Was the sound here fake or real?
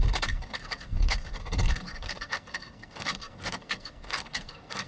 fake